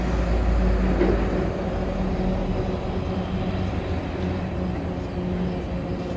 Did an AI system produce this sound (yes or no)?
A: no